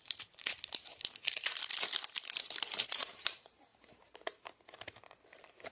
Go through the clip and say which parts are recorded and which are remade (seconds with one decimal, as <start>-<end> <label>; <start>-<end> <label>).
0.0-1.6 remade; 1.6-2.8 recorded; 2.8-5.7 remade